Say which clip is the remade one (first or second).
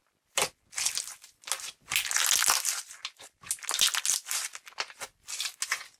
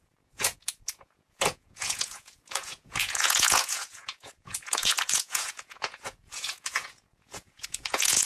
second